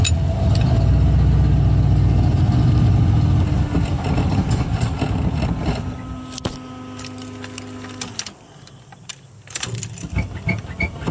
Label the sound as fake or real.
real